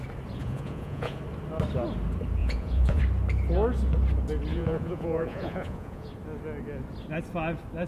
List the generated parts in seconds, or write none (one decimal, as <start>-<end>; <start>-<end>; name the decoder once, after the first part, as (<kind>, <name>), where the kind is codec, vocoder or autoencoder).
0.4-1.2 (vocoder, Vocos); 2.4-3.0; 4.5-6.1